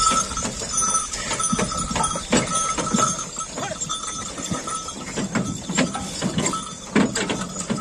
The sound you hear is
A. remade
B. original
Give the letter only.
B